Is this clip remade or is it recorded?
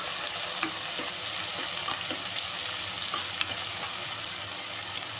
recorded